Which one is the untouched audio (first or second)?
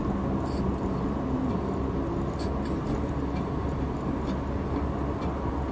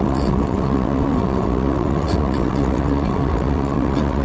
first